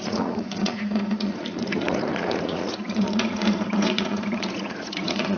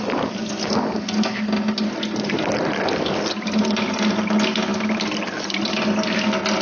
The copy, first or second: first